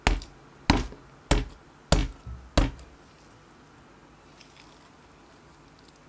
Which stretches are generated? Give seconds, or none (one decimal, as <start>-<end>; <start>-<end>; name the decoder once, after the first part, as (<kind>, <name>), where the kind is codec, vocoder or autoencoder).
none